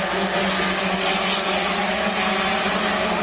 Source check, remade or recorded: recorded